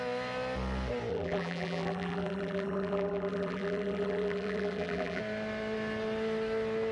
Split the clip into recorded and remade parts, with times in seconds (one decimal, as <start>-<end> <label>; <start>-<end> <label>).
0.0-1.1 recorded; 1.1-5.2 remade; 5.2-6.9 recorded